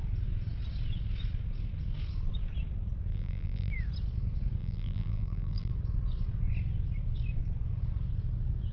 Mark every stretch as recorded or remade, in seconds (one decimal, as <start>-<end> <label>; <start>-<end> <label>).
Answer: 0.0-3.1 recorded; 3.1-3.7 remade; 3.7-4.6 recorded; 4.6-5.7 remade; 5.7-8.7 recorded